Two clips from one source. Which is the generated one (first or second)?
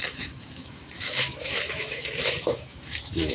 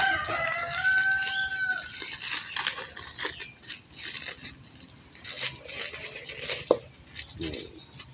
first